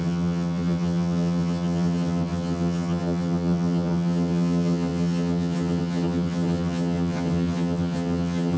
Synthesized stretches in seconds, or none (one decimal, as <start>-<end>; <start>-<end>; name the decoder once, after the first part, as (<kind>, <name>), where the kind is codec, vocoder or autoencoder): 0.0-8.6 (vocoder, HiFi-GAN)